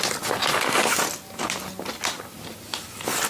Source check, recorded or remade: recorded